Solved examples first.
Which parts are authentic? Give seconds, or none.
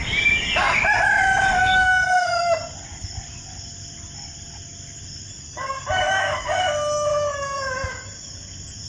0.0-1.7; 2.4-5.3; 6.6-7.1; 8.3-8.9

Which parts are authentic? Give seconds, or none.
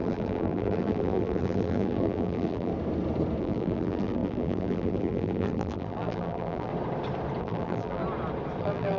2.7-3.4; 6.7-7.4; 8.0-8.6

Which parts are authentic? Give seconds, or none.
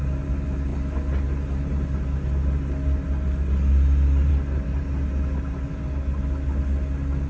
0.0-7.3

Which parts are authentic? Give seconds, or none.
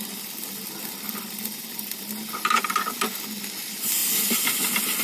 0.0-0.8; 1.6-5.0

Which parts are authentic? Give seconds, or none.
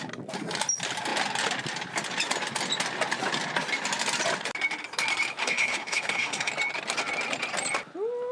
0.0-5.4; 6.5-8.3